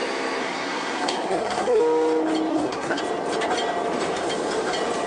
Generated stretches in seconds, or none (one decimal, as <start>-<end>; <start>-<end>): 0.4-1.8; 2.5-3.0

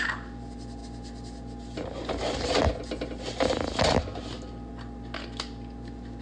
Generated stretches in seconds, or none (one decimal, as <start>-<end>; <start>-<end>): none

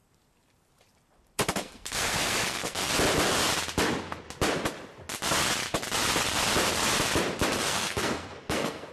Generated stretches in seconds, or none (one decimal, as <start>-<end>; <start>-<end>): 1.5-2.9; 7.6-8.9